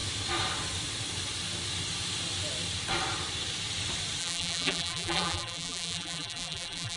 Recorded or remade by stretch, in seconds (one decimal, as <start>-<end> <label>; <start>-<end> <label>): 0.0-4.2 recorded; 4.2-7.0 remade